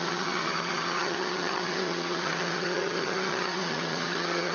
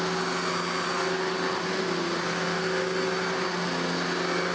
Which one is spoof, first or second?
first